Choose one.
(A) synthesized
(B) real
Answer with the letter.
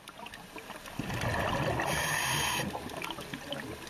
B